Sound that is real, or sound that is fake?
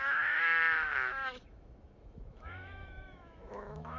fake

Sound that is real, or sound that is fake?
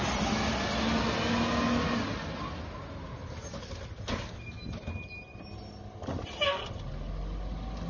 real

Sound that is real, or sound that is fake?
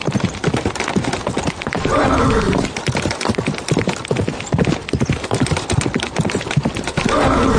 real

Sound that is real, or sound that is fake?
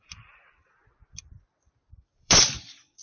fake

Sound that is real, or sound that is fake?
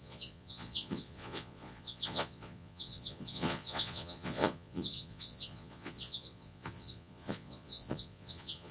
fake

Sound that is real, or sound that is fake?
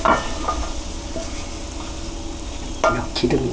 real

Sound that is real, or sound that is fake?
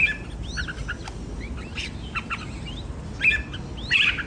real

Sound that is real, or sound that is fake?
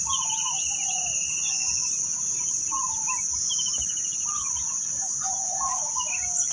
real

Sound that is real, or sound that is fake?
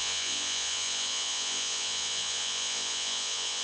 fake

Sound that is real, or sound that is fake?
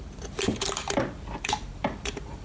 fake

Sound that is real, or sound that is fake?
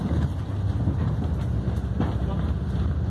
real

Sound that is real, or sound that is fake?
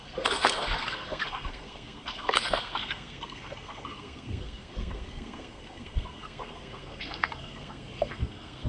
fake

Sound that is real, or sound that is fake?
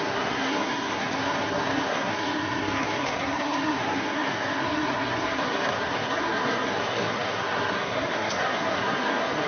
fake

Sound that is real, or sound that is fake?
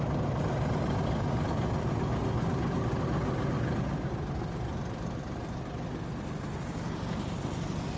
real